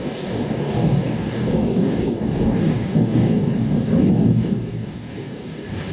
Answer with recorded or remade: remade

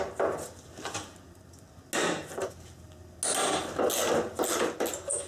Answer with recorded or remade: recorded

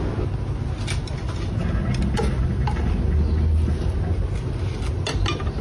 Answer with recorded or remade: recorded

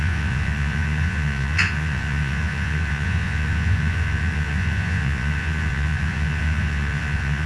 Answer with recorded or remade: remade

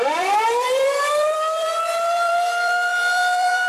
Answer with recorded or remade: remade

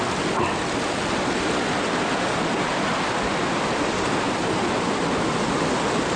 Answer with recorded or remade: recorded